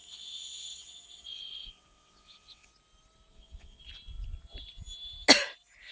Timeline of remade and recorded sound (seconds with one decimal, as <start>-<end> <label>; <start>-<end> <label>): 0.0-2.7 remade; 2.7-3.3 recorded; 3.3-3.8 remade; 3.8-5.9 recorded